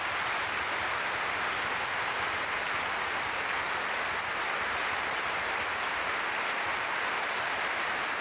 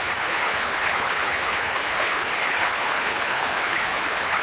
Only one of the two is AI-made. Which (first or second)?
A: second